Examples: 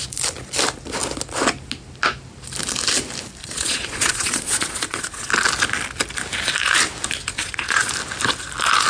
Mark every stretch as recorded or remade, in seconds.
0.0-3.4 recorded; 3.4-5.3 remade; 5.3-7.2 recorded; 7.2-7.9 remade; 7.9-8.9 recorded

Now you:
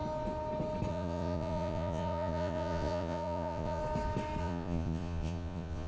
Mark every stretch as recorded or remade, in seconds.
0.0-0.9 recorded; 0.9-3.8 remade; 3.8-4.4 recorded; 4.4-5.9 remade

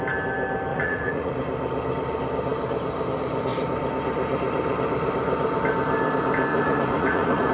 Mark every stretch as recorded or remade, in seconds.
0.0-0.7 recorded; 0.7-1.3 remade; 1.3-6.5 recorded; 6.5-7.5 remade

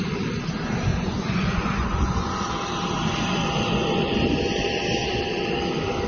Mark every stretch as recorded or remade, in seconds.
0.0-0.9 recorded; 0.9-2.5 remade; 2.5-6.1 recorded

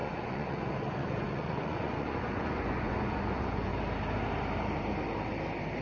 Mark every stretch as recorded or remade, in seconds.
0.0-3.7 remade; 3.7-5.8 recorded

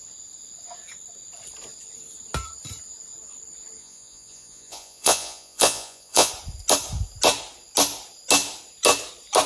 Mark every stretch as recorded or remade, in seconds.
0.0-3.8 recorded; 3.8-6.3 remade; 6.3-9.5 recorded

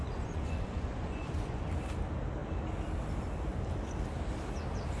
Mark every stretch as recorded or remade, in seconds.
0.0-1.6 remade; 1.6-5.0 recorded

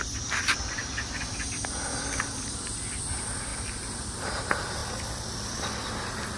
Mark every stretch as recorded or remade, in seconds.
0.0-6.4 recorded